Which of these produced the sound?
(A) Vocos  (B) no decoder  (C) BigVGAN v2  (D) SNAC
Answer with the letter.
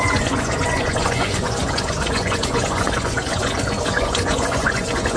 A